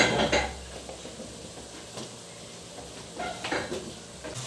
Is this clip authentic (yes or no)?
yes